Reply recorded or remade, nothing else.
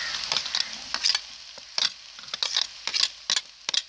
recorded